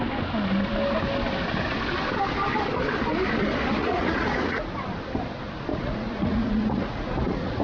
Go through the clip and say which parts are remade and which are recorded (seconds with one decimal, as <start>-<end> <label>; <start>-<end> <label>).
0.0-3.8 recorded; 3.8-4.7 remade; 4.7-5.7 recorded; 5.7-7.6 remade